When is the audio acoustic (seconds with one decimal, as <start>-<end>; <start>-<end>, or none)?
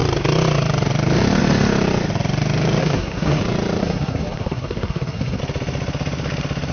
0.0-2.8; 3.4-3.8; 5.4-6.7